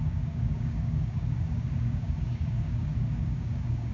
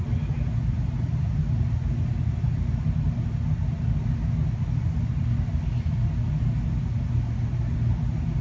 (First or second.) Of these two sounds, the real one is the second